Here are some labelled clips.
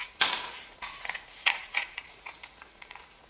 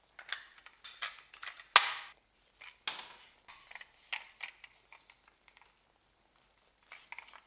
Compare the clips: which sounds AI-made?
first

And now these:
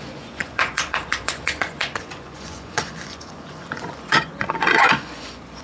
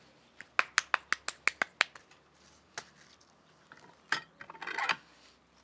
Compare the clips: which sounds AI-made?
first